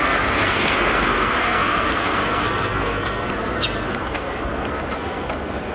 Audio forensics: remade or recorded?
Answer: remade